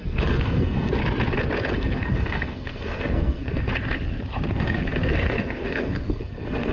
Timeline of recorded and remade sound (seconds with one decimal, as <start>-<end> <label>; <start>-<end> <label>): 0.0-1.0 remade; 1.0-1.7 recorded; 1.7-3.7 remade; 3.7-4.5 recorded; 4.5-6.7 remade